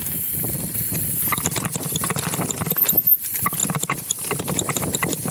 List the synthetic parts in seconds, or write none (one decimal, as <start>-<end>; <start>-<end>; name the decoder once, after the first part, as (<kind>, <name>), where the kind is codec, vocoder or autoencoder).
0.0-0.7 (vocoder, BigVGAN v2)